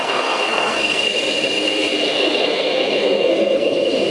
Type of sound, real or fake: fake